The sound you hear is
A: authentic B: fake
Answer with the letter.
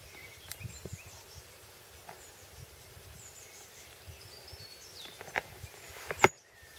B